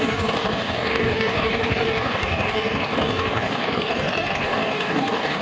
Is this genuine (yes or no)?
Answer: no